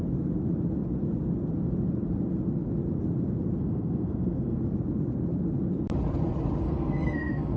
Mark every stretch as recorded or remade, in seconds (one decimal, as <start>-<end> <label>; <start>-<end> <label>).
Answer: 0.0-3.6 recorded; 3.6-4.6 remade; 4.6-6.6 recorded; 6.6-7.6 remade